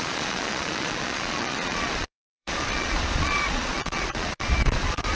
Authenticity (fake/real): fake